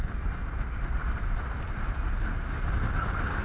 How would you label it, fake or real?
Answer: real